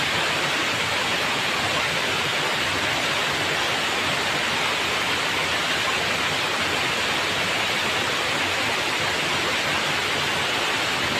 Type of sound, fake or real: real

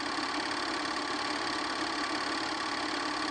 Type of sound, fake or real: real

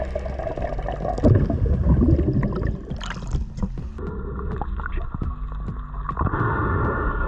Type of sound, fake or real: real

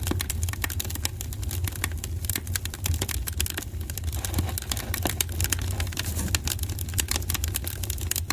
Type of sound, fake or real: real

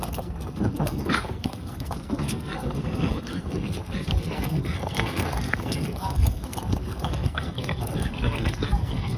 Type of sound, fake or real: fake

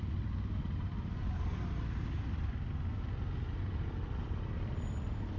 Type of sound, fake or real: real